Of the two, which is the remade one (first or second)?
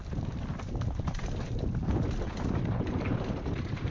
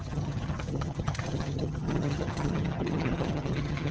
second